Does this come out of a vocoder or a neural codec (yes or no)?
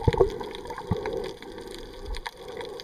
no